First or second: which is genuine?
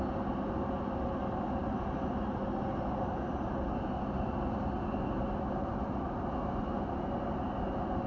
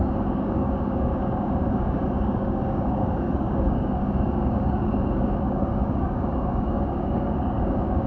first